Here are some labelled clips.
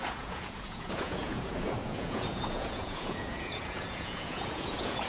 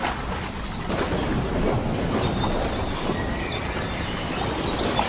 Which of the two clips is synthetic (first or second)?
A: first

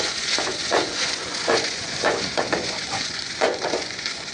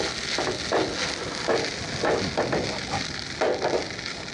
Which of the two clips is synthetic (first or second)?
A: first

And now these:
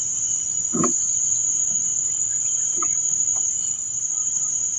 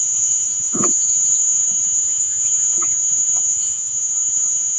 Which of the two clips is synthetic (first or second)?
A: second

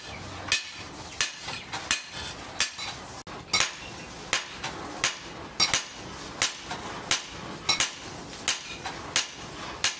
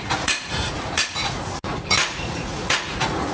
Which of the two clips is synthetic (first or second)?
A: second